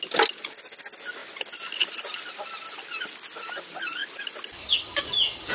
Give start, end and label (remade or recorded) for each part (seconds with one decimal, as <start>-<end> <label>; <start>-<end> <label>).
0.0-5.5 recorded